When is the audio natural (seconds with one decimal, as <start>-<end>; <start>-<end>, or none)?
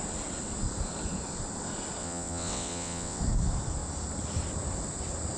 0.0-2.0; 3.2-5.4